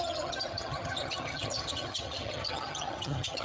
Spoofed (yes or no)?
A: yes